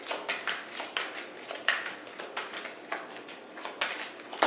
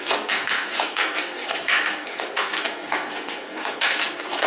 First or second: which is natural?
first